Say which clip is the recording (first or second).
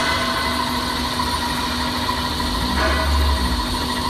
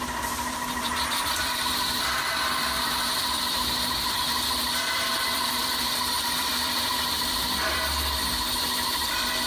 first